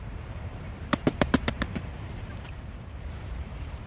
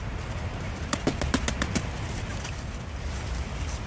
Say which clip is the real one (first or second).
second